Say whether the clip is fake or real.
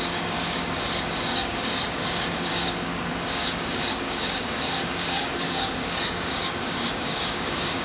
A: fake